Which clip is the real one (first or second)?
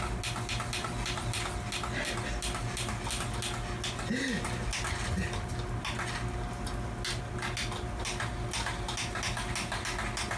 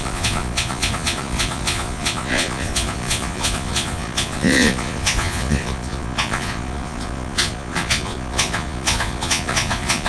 first